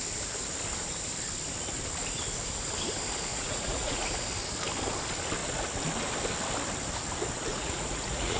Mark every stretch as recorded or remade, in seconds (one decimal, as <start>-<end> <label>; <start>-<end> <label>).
0.0-3.3 recorded; 3.3-4.0 remade; 4.0-7.5 recorded; 7.5-8.4 remade